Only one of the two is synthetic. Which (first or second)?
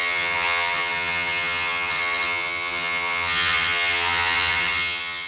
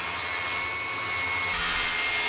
first